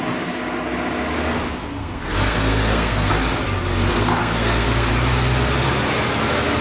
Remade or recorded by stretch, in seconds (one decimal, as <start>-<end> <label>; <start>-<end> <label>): 0.0-1.8 recorded; 1.8-3.1 remade; 3.1-3.9 recorded; 3.9-4.9 remade; 4.9-6.6 recorded